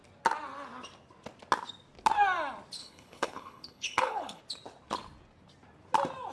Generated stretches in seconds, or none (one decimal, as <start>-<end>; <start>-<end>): 2.8-4.4